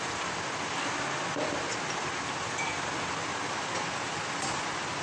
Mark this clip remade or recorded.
recorded